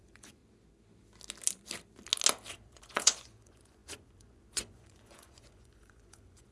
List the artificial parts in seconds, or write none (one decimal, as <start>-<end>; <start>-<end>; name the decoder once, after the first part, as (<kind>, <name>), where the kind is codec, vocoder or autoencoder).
0.0-0.4 (vocoder, Vocos); 2.5-6.5